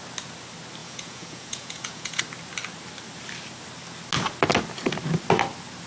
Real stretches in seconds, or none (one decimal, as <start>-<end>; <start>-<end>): 0.0-0.8; 2.2-5.9